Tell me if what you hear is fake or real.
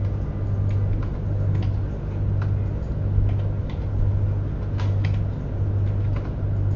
real